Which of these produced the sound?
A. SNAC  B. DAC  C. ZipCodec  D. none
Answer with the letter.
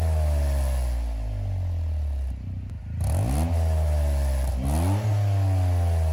D